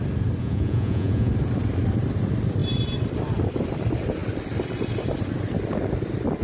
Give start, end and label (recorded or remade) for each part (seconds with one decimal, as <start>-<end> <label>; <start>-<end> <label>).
0.0-0.4 recorded; 0.4-1.3 remade; 1.3-6.4 recorded